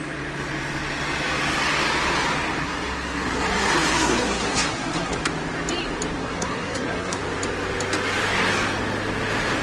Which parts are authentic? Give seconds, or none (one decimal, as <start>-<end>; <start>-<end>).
0.0-2.6; 5.2-6.2; 7.2-9.6